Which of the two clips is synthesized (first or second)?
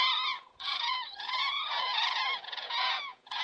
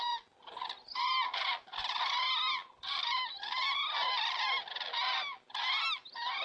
first